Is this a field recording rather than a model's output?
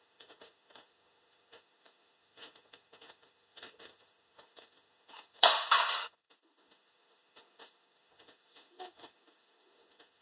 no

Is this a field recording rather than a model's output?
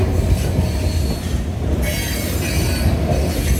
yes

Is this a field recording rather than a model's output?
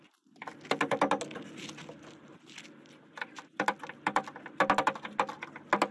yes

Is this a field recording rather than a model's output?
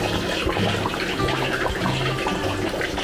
yes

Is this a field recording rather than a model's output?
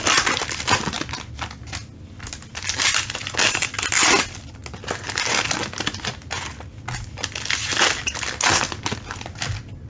yes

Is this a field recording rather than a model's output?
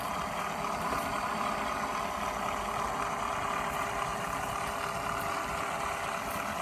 yes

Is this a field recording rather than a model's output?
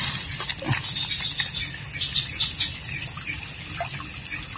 yes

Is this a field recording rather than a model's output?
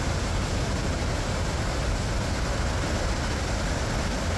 yes